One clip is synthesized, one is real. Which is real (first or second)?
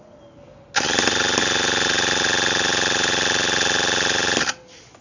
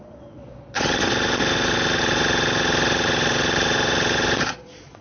first